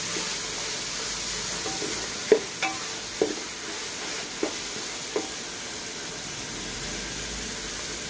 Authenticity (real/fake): real